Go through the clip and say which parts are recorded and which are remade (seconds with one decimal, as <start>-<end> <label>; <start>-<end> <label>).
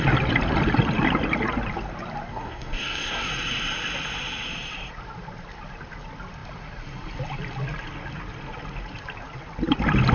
0.0-2.3 recorded; 2.3-3.3 remade; 3.3-10.1 recorded